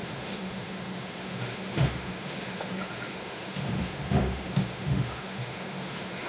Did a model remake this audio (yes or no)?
yes